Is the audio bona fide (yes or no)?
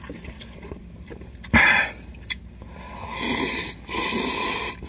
no